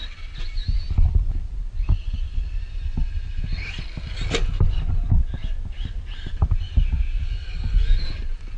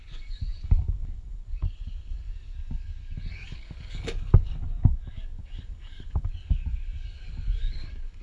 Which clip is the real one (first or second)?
first